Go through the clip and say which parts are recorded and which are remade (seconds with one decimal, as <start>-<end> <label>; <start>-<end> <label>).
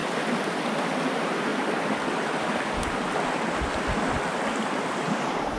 0.0-1.1 recorded; 1.1-1.5 remade; 1.5-4.9 recorded; 4.9-5.6 remade